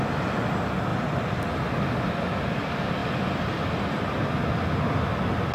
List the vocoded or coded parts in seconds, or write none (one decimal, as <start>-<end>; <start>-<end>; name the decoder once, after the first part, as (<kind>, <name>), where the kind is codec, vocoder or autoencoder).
0.9-1.4 (vocoder, BigVGAN v2)